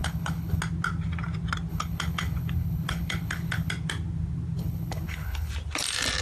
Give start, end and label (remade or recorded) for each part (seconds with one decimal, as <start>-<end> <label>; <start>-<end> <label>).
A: 0.0-0.6 remade; 0.6-1.7 recorded; 1.7-3.7 remade; 3.7-4.6 recorded; 4.6-5.5 remade; 5.5-6.2 recorded